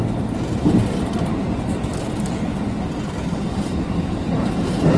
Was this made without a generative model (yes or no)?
yes